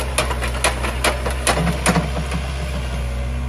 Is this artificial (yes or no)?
no